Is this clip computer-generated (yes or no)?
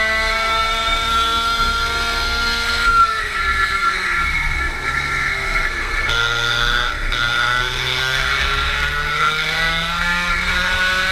yes